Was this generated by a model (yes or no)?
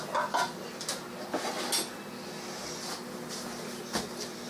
no